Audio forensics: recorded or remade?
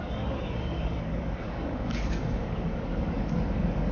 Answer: remade